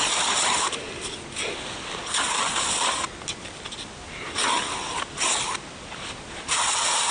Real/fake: real